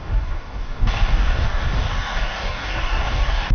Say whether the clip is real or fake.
fake